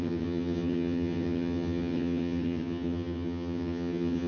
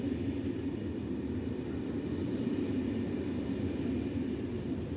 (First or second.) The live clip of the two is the second